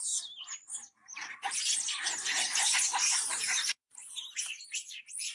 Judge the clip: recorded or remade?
recorded